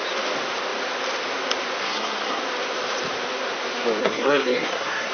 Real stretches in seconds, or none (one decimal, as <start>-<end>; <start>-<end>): 0.0-1.8; 2.4-4.0